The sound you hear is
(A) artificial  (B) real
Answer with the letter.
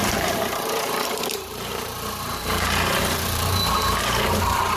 A